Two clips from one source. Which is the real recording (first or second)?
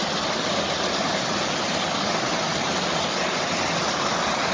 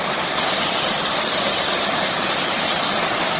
first